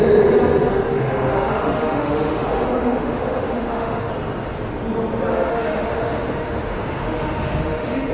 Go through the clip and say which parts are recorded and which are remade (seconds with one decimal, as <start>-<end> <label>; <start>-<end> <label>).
0.0-0.7 recorded; 0.7-4.1 remade; 4.1-5.3 recorded; 5.3-8.1 remade